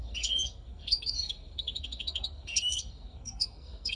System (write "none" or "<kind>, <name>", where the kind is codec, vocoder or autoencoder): codec, SNAC